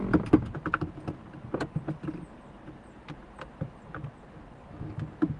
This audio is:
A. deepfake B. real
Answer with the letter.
B